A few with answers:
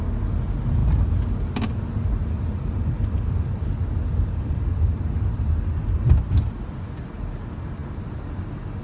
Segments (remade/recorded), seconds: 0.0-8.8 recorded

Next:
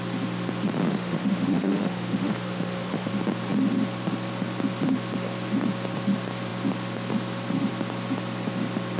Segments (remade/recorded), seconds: 0.0-0.9 recorded; 0.9-3.1 remade; 3.1-9.0 recorded

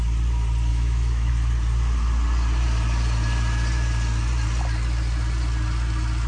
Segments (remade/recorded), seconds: 0.0-0.7 recorded; 0.7-1.3 remade; 1.3-6.3 recorded

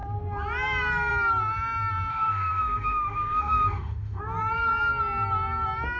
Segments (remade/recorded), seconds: 0.0-2.1 recorded; 2.1-4.2 remade; 4.2-6.0 recorded